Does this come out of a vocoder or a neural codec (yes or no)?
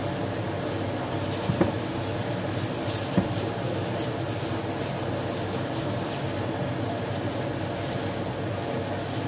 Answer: no